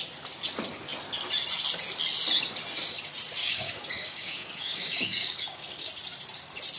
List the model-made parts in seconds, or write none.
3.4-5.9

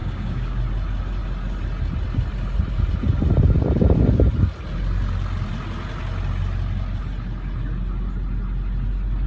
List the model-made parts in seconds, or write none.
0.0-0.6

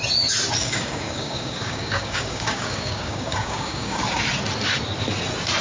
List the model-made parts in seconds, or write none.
0.6-4.0